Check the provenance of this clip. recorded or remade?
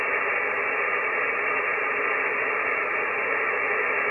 recorded